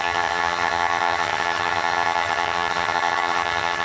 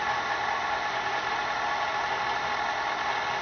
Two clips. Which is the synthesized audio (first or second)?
first